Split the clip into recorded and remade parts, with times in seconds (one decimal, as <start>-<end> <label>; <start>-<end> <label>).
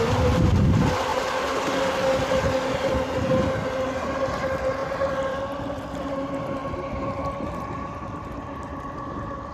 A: 0.0-1.1 recorded; 1.1-1.6 remade; 1.6-4.8 recorded; 4.8-5.4 remade; 5.4-6.6 recorded; 6.6-8.9 remade; 8.9-9.5 recorded